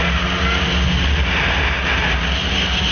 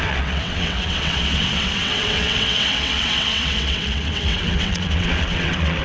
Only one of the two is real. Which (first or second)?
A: first